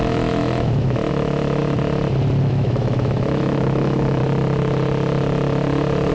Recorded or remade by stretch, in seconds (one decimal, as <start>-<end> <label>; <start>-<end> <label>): 0.0-1.6 remade; 1.6-2.4 recorded; 2.4-4.2 remade; 4.2-6.1 recorded